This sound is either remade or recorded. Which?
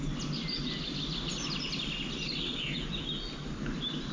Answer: recorded